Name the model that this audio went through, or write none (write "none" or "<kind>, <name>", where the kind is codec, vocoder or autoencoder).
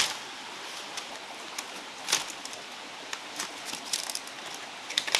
none